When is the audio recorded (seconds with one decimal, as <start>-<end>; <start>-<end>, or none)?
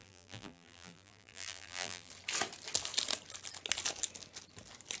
2.1-5.0